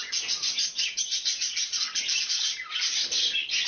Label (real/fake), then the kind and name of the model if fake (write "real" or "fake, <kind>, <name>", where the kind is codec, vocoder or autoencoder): real